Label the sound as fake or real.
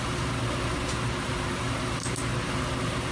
fake